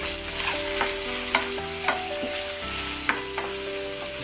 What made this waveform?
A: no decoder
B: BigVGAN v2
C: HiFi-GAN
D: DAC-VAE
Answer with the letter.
A